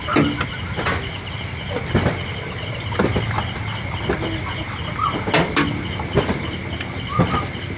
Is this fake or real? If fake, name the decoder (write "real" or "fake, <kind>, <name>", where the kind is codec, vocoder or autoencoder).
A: real